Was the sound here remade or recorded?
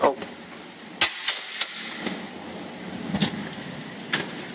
recorded